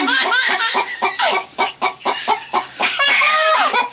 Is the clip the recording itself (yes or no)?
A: no